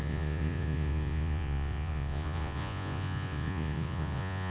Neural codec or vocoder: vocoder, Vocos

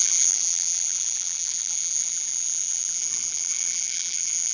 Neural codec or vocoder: vocoder, BigVGAN v2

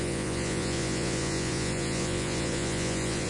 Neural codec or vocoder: vocoder, Vocos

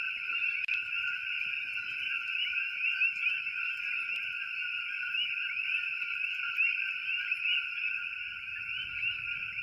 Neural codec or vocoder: vocoder, BigVGAN v2